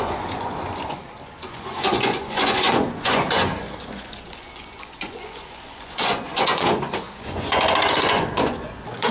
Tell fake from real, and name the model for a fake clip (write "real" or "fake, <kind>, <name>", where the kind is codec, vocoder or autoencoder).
fake, vocoder, Vocos